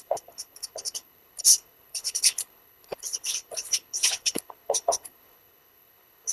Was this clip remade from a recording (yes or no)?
yes